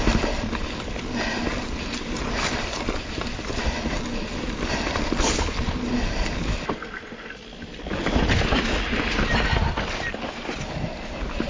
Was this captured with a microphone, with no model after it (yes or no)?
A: yes